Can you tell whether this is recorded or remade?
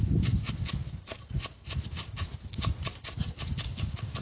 recorded